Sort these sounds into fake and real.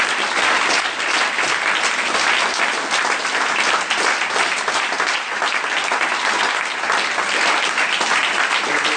real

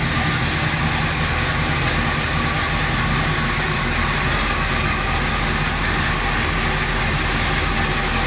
real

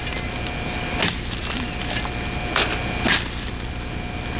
real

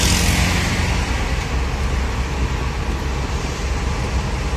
real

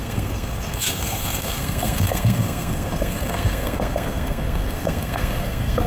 fake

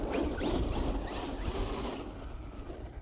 real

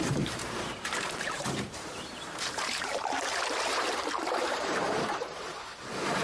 fake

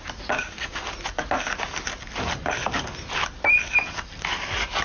real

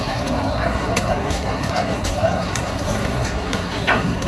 fake